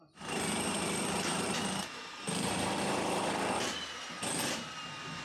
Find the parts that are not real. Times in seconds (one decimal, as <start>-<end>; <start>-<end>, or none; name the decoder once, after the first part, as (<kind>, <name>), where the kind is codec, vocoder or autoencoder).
1.3-3.3 (vocoder, BigVGAN v2)